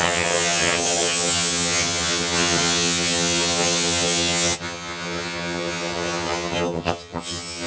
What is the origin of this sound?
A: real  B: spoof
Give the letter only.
B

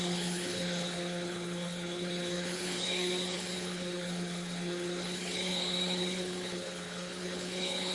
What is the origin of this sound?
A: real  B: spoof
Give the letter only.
B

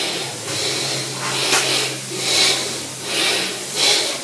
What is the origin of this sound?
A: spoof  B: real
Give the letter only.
B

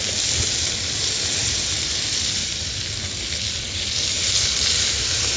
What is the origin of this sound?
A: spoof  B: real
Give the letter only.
B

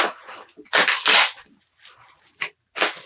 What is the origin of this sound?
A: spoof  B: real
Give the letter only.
B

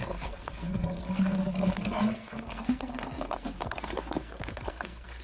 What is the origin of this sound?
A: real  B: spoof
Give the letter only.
B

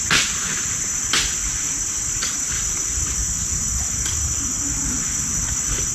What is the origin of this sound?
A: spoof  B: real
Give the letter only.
B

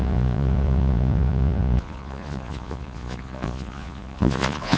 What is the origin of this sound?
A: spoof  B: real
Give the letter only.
A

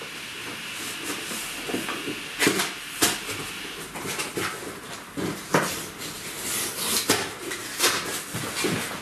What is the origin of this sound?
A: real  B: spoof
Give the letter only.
A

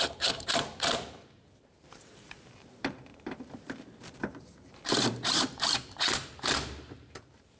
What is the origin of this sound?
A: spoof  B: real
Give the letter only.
A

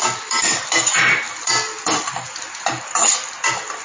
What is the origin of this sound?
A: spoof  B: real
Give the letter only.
B